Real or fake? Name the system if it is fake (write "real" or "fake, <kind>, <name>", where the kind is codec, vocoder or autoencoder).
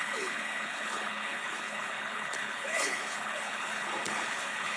fake, codec, HILCodec